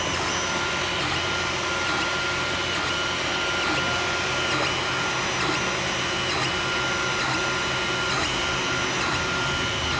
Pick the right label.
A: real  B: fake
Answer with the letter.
A